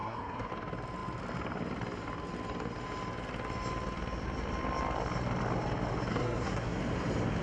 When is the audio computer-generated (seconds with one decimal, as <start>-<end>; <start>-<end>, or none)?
0.0-0.5; 6.1-6.8